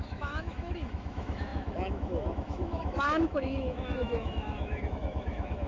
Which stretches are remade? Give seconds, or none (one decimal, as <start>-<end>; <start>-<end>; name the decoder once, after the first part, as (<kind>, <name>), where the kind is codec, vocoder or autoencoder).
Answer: 0.0-5.7 (autoencoder, DAC-VAE)